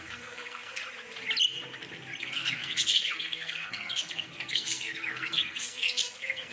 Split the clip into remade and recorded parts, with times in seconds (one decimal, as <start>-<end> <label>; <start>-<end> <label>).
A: 0.0-0.8 remade; 0.8-2.2 recorded; 2.2-6.5 remade